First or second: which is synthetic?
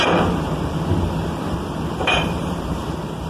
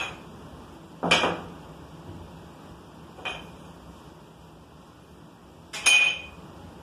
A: first